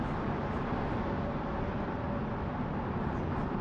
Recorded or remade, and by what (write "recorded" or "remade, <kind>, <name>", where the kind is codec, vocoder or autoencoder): recorded